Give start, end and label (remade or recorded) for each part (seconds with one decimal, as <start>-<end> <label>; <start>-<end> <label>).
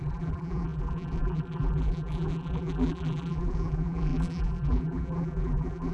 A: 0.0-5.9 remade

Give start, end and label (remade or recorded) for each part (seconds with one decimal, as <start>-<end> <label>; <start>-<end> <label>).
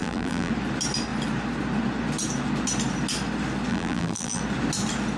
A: 0.0-0.5 remade; 0.5-3.7 recorded; 3.7-4.4 remade; 4.4-5.2 recorded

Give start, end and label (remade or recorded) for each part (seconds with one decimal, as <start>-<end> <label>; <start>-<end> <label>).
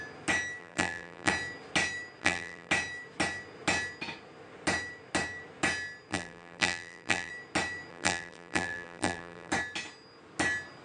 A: 0.0-0.6 recorded; 0.6-1.3 remade; 1.3-2.2 recorded; 2.2-2.7 remade; 2.7-6.1 recorded; 6.1-7.3 remade; 7.3-7.9 recorded; 7.9-9.5 remade; 9.5-10.8 recorded